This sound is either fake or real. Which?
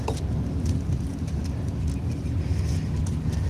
real